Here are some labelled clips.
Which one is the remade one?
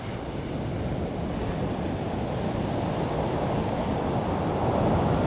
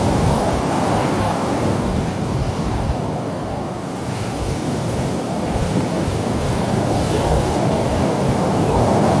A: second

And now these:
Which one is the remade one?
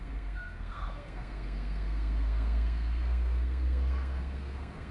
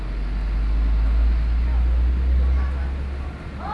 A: first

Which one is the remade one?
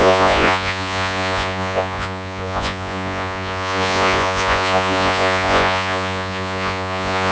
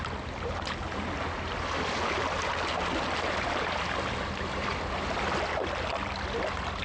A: first